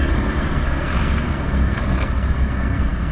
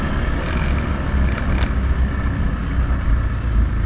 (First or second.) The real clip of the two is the second